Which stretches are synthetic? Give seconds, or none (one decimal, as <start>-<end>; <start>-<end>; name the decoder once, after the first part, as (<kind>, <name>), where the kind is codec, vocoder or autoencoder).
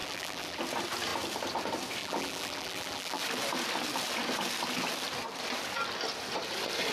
0.0-0.6 (vocoder, BigVGAN v2); 2.0-3.2